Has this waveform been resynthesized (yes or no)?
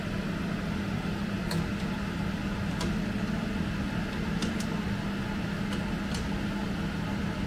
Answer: no